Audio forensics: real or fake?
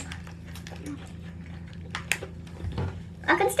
real